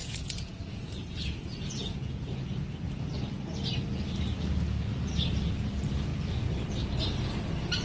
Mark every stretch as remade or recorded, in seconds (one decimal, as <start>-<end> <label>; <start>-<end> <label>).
0.0-2.3 remade; 2.3-7.8 recorded